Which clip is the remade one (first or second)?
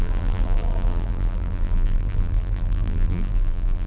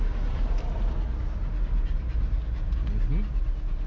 first